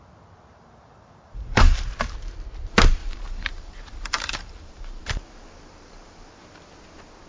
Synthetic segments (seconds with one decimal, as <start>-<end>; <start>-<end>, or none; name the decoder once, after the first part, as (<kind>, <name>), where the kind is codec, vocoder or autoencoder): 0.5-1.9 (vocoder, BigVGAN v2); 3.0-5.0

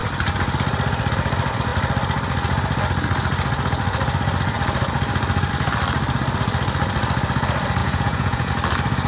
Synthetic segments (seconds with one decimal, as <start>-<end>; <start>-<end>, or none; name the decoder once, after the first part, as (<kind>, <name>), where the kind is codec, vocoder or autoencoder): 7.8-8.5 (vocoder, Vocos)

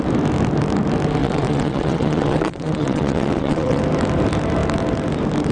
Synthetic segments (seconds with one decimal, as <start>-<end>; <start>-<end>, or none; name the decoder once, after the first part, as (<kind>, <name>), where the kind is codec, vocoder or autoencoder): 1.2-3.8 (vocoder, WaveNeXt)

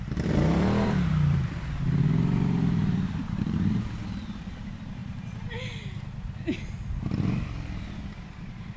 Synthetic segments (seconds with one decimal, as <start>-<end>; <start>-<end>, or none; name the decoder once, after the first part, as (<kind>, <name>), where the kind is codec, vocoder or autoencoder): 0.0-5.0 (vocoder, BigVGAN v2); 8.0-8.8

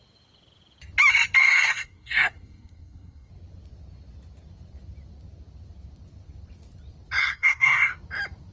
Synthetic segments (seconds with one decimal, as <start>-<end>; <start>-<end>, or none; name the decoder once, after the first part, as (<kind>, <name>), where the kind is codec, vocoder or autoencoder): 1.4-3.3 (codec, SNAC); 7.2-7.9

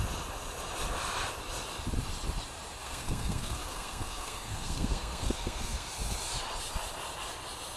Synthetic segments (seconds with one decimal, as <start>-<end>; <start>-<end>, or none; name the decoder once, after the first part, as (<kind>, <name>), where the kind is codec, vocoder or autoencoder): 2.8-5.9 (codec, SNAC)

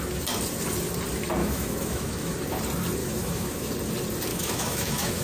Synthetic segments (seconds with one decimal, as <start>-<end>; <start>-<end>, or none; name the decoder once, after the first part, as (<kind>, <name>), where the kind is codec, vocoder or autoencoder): 1.4-2.3 (autoencoder, DAC-VAE); 3.0-3.7; 4.3-5.2